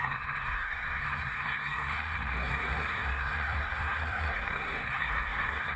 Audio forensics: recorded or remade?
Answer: remade